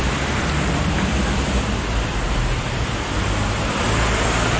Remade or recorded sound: remade